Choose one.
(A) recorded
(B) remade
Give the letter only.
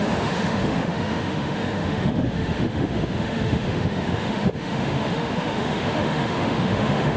B